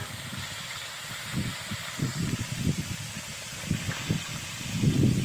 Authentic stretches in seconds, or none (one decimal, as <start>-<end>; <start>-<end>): 0.0-2.1; 3.5-5.2